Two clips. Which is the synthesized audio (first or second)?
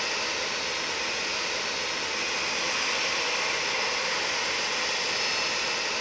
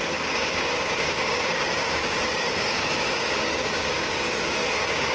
second